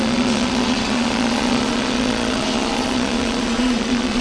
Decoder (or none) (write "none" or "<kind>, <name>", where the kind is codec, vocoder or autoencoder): vocoder, Vocos